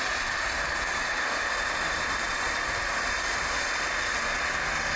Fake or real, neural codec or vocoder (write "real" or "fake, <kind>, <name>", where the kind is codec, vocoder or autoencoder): real